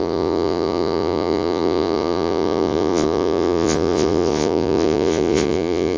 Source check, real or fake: fake